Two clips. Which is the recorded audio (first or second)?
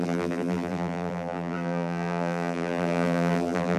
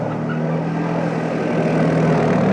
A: second